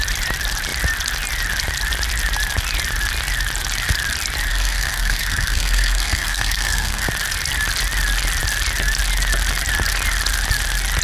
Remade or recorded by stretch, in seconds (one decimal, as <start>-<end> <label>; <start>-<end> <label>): 0.0-4.5 recorded; 4.5-7.1 remade; 7.1-11.0 recorded